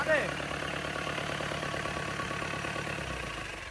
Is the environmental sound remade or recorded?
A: recorded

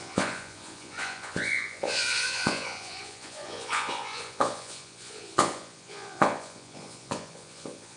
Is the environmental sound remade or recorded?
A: remade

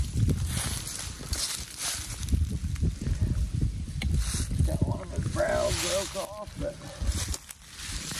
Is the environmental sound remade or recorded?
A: recorded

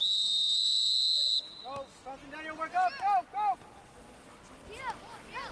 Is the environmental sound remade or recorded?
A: recorded